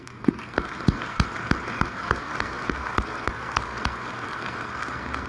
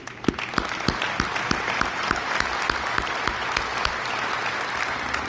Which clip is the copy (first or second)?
first